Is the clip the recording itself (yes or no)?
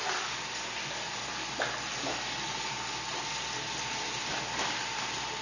yes